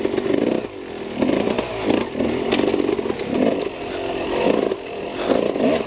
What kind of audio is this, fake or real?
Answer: real